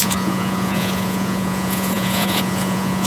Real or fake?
fake